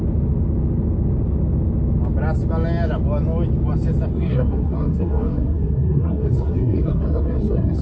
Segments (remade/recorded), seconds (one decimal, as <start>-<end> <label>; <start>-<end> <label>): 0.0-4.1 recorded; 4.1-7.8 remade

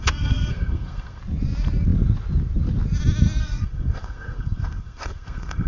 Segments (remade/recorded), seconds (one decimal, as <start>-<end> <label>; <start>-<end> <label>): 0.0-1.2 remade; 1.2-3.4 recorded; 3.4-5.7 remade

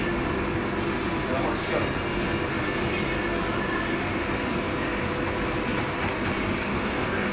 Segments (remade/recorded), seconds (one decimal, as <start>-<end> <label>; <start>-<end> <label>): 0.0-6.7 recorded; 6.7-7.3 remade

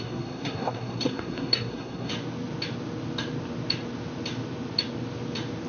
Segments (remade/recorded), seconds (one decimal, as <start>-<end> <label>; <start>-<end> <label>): 0.0-2.1 remade; 2.1-5.7 recorded